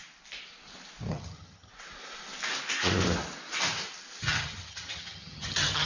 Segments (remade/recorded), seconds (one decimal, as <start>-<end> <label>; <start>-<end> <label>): 0.0-1.1 recorded; 1.1-1.7 remade; 1.7-4.2 recorded; 4.2-5.9 remade